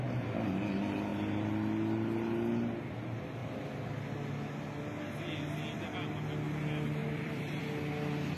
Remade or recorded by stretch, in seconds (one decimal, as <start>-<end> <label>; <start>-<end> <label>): 0.0-7.0 recorded; 7.0-7.6 remade; 7.6-8.4 recorded